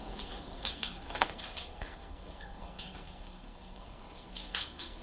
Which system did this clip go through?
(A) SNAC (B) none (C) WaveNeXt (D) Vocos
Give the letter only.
A